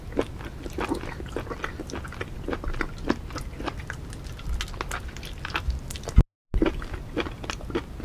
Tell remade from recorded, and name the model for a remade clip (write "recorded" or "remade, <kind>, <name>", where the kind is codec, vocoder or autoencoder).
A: recorded